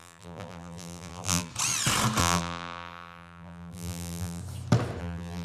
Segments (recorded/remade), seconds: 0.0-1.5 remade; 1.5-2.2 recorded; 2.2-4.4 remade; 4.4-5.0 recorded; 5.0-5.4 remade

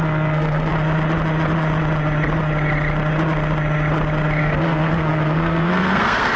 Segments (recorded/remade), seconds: 0.0-0.7 remade; 0.7-4.4 recorded; 4.4-6.4 remade

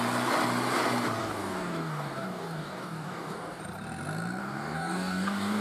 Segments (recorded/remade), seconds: 0.0-1.2 recorded; 1.2-3.6 remade; 3.6-4.4 recorded; 4.4-5.6 remade